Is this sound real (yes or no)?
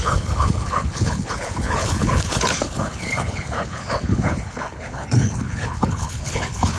no